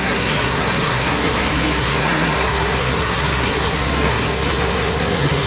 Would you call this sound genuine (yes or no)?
no